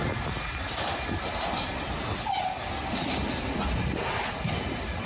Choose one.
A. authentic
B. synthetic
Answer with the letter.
A